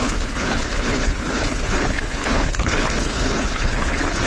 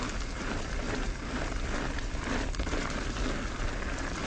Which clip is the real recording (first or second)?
second